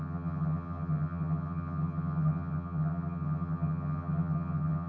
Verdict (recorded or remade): remade